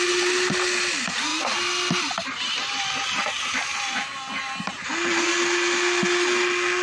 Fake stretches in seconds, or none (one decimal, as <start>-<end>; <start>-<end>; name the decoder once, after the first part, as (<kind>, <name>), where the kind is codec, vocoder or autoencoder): none